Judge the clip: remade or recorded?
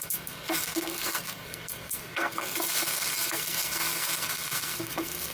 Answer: remade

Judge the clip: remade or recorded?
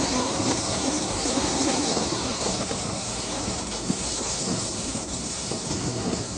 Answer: remade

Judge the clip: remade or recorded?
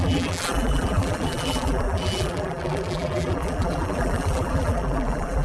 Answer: remade